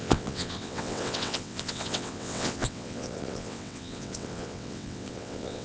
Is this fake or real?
fake